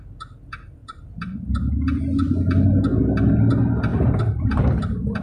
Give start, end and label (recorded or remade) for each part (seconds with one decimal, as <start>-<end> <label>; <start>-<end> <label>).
0.0-0.8 recorded; 0.8-2.0 remade; 2.0-3.9 recorded; 3.9-4.6 remade; 4.6-5.2 recorded